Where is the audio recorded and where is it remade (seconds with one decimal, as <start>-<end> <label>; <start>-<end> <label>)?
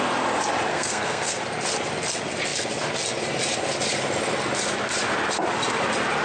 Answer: 0.0-0.7 recorded; 0.7-1.4 remade; 1.4-6.2 recorded